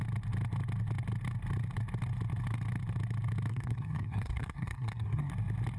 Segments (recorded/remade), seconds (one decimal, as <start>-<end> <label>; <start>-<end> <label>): 0.0-3.5 recorded; 3.5-5.3 remade; 5.3-5.8 recorded

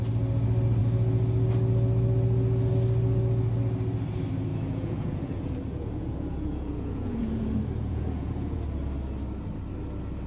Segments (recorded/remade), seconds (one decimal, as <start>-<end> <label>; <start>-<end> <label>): 0.0-4.5 recorded; 4.5-8.6 remade; 8.6-10.3 recorded